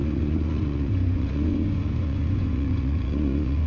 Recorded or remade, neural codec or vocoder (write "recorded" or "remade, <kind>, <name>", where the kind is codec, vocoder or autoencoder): remade, vocoder, Vocos